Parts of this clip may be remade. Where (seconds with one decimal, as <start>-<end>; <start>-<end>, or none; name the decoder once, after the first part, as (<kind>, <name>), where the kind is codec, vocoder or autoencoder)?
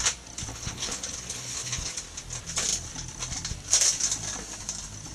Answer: 0.5-1.9 (codec, HILCodec)